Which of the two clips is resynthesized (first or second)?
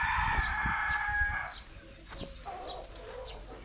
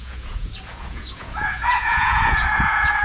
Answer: second